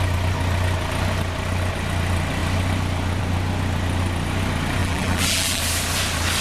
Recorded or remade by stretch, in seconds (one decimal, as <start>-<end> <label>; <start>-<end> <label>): 0.0-4.8 recorded; 4.8-5.6 remade; 5.6-6.4 recorded

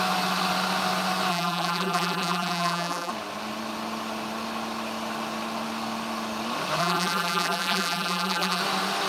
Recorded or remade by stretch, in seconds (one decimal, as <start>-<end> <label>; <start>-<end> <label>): 0.0-1.3 recorded; 1.3-3.1 remade; 3.1-6.8 recorded; 6.8-8.6 remade; 8.6-9.1 recorded

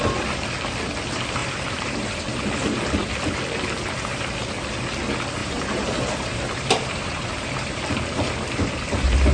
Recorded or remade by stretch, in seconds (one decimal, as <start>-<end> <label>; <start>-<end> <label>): 0.0-1.4 recorded; 1.4-2.4 remade; 2.4-5.4 recorded; 5.4-7.8 remade; 7.8-9.3 recorded

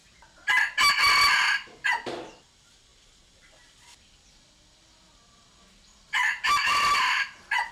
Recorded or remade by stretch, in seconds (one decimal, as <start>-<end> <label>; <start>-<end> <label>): 0.0-2.9 recorded; 2.9-7.7 remade

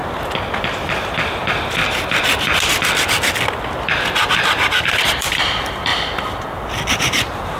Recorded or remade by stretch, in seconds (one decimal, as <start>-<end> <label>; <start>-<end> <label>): 0.0-0.8 recorded; 0.8-1.8 remade; 1.8-4.9 recorded; 4.9-5.9 remade; 5.9-6.9 recorded; 6.9-7.6 remade

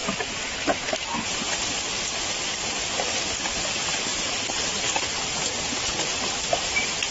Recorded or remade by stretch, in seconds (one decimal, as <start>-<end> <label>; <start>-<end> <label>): 0.0-4.1 recorded; 4.1-4.8 remade; 4.8-7.1 recorded

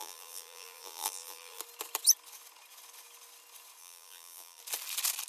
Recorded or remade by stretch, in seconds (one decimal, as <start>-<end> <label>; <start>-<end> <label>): 0.0-1.6 remade; 1.6-3.8 recorded; 3.8-4.6 remade; 4.6-5.3 recorded

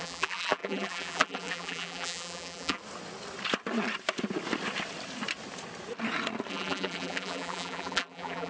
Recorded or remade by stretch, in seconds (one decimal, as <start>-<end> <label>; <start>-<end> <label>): 0.0-2.8 remade; 2.8-6.5 recorded; 6.5-8.5 remade